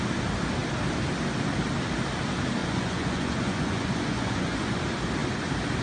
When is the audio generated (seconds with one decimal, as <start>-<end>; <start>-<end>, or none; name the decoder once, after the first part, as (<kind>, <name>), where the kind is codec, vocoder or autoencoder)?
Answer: 2.6-4.8 (vocoder, Vocos)